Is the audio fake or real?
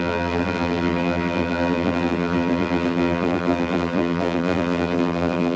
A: fake